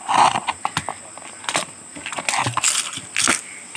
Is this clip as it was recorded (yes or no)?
yes